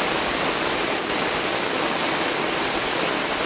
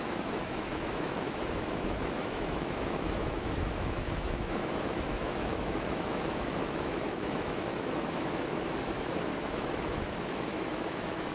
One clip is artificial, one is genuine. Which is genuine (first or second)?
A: first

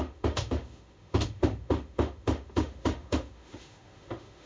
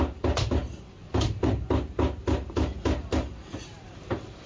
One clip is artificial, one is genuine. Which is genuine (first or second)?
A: second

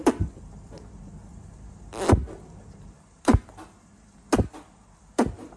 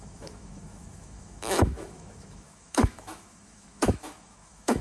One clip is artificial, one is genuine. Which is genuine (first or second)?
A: first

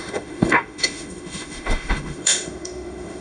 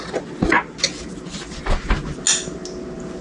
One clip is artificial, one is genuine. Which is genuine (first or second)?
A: second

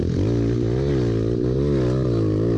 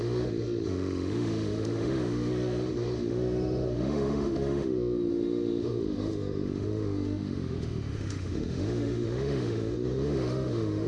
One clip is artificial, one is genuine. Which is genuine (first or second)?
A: first